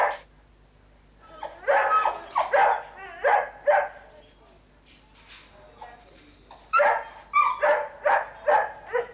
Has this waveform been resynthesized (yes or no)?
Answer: no